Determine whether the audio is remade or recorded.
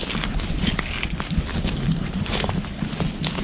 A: recorded